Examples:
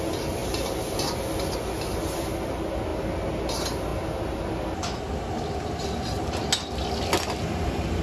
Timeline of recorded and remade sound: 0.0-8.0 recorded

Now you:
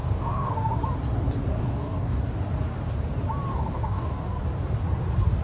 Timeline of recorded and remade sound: 0.0-0.7 remade; 0.7-1.6 recorded; 1.6-2.2 remade; 2.2-3.5 recorded; 3.5-4.4 remade; 4.4-5.4 recorded

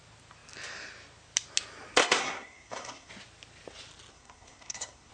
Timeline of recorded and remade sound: 0.0-2.0 recorded; 2.0-3.1 remade; 3.1-4.1 recorded; 4.1-5.1 remade

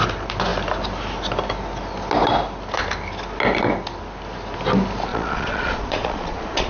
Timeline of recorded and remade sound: 0.0-5.1 recorded; 5.1-6.7 remade

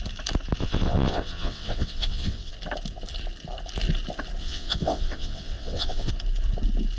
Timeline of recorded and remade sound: 0.0-0.6 recorded; 0.6-2.5 remade; 2.5-4.4 recorded; 4.4-6.1 remade; 6.1-7.0 recorded

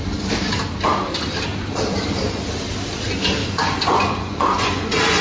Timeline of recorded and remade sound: 0.0-3.4 recorded; 3.4-5.2 remade

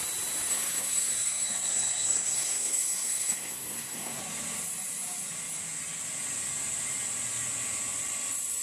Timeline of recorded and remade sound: 0.0-0.5 recorded; 0.5-4.2 remade; 4.2-8.6 recorded